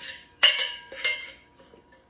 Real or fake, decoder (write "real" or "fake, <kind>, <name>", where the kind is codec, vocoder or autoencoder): fake, codec, DAC